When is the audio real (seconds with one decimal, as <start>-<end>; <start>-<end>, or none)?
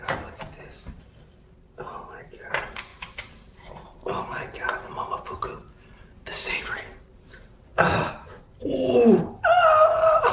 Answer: none